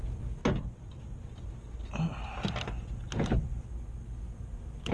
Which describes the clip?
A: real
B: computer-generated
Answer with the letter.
A